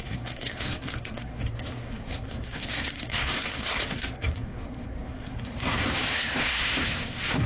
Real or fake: fake